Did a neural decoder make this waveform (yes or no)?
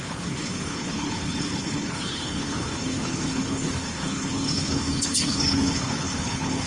yes